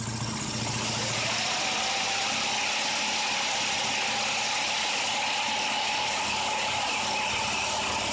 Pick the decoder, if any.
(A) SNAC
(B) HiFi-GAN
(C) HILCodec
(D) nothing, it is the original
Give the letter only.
D